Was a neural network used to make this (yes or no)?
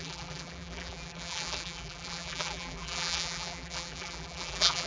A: yes